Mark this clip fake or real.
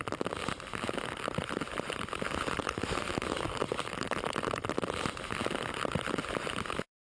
real